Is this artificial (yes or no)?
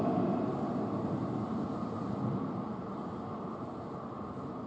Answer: no